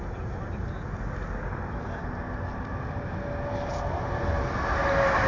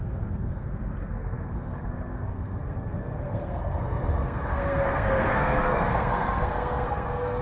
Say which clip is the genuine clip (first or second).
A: first